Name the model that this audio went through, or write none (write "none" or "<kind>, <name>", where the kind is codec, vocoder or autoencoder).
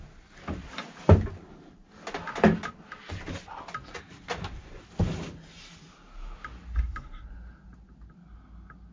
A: none